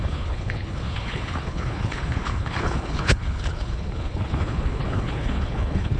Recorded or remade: remade